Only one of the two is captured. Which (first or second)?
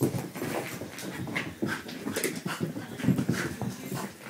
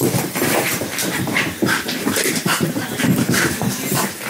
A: first